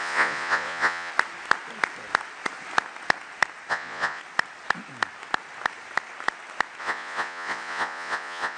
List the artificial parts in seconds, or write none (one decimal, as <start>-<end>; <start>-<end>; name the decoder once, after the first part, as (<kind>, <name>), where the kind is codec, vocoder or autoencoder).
0.0-1.1 (vocoder, Vocos); 3.7-4.2; 6.8-8.6